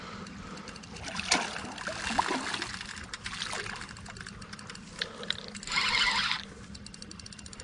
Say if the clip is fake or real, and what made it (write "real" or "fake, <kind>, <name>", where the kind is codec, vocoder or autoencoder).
real